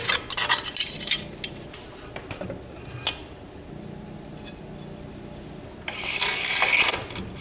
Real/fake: real